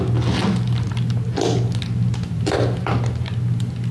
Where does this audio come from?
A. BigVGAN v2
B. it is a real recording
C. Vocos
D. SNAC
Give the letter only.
B